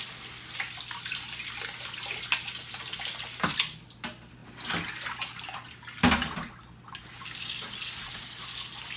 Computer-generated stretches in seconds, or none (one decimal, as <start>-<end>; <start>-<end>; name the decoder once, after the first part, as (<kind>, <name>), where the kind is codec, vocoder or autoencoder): none